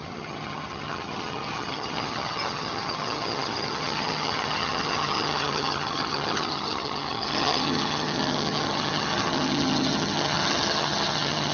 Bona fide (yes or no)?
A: no